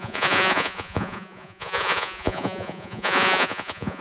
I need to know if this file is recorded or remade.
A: remade